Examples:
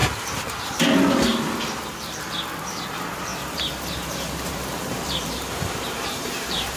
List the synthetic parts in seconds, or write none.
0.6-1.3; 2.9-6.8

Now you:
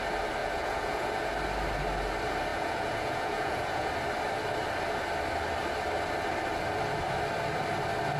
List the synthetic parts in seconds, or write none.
0.4-1.3; 2.5-3.9

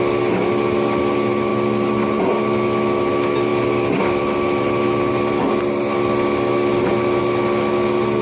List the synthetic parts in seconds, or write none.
1.5-2.2; 3.5-7.2

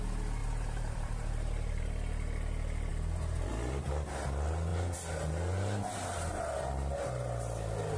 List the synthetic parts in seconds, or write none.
0.4-1.8

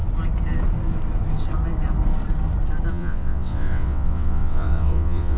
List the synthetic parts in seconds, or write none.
2.9-5.4

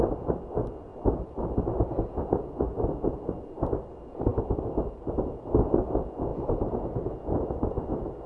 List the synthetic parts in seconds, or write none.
none

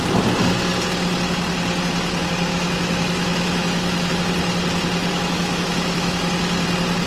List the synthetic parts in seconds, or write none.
2.5-4.2; 5.0-6.3